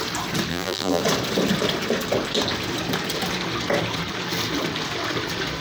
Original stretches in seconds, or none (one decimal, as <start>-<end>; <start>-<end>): 0.0-0.5; 1.0-5.6